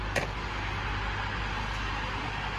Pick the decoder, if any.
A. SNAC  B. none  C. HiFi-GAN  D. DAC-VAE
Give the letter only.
B